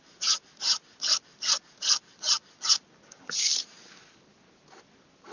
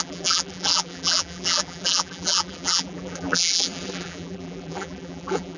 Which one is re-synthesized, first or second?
second